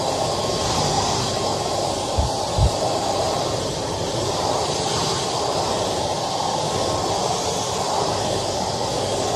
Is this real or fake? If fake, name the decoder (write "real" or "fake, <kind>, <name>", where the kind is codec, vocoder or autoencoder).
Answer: real